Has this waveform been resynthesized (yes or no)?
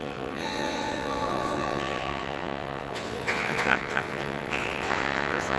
yes